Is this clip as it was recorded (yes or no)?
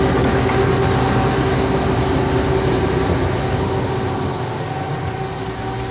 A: yes